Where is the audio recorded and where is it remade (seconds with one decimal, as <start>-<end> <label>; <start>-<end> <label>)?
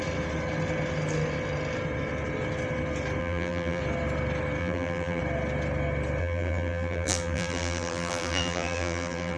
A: 0.0-3.2 recorded; 3.2-3.8 remade; 3.8-4.6 recorded; 4.6-5.2 remade; 5.2-6.2 recorded; 6.2-9.4 remade